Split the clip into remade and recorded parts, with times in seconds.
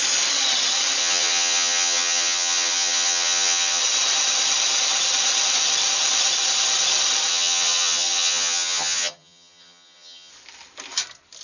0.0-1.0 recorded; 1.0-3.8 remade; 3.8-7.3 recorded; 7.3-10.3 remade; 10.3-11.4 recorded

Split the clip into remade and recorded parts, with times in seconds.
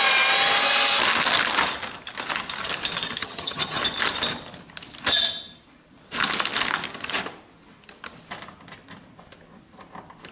0.0-3.2 recorded; 3.2-3.8 remade; 3.8-10.3 recorded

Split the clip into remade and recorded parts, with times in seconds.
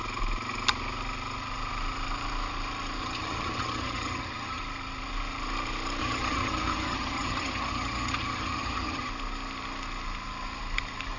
0.0-3.0 recorded; 3.0-4.6 remade; 4.6-6.0 recorded; 6.0-9.1 remade; 9.1-11.2 recorded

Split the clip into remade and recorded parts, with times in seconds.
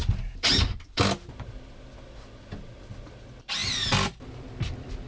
0.0-5.1 recorded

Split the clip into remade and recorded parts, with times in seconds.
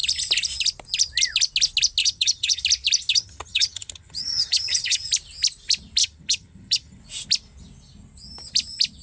0.0-2.0 recorded; 2.0-2.6 remade; 2.6-3.1 recorded; 3.1-5.1 remade; 5.1-6.0 recorded; 6.0-7.0 remade; 7.0-9.0 recorded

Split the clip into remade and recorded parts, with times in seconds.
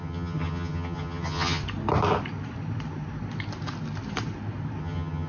0.0-1.6 remade; 1.6-4.8 recorded; 4.8-5.3 remade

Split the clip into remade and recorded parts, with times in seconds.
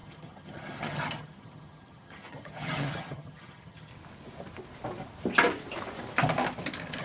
0.0-3.9 remade; 3.9-7.0 recorded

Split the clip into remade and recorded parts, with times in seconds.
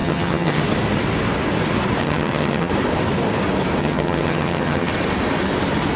0.0-0.6 remade; 0.6-2.0 recorded; 2.0-2.7 remade; 2.7-3.8 recorded; 3.8-4.9 remade; 4.9-6.0 recorded